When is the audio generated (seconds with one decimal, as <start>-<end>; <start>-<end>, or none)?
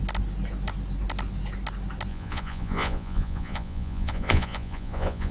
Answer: 2.1-5.3